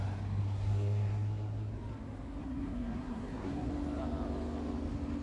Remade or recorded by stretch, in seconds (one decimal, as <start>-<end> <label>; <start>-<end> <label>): 0.0-0.4 recorded; 0.4-1.7 remade; 1.7-2.4 recorded; 2.4-3.7 remade; 3.7-5.2 recorded